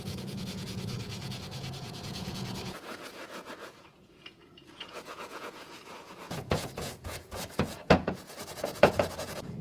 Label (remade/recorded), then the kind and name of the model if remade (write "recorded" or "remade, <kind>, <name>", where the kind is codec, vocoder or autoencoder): remade, vocoder, Vocos